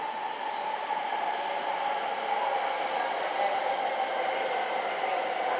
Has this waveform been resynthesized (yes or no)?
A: no